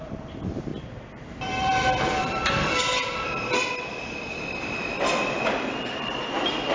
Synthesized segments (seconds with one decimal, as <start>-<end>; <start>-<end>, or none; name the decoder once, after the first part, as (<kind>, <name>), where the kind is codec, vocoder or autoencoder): 0.0-0.7 (vocoder, BigVGAN v2); 1.4-2.4; 3.6-6.7